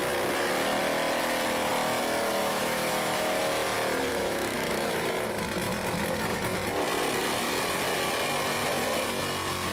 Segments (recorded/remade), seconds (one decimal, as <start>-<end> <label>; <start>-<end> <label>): 0.0-2.4 recorded; 2.4-3.3 remade; 3.3-4.1 recorded; 4.1-5.0 remade; 5.0-9.7 recorded